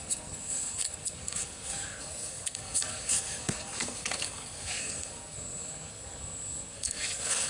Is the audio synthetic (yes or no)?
yes